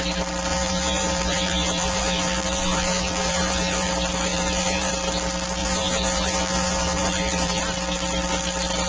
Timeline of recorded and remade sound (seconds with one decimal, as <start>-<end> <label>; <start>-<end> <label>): 0.0-0.5 recorded; 0.5-3.9 remade; 3.9-4.3 recorded; 4.3-4.9 remade; 4.9-5.6 recorded; 5.6-7.6 remade; 7.6-8.9 recorded